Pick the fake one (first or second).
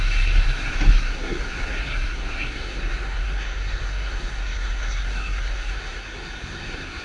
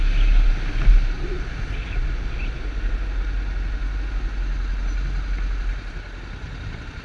first